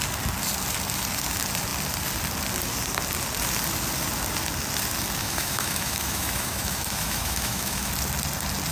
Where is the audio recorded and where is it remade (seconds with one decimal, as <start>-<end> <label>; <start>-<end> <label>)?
0.0-5.2 recorded; 5.2-7.9 remade; 7.9-8.7 recorded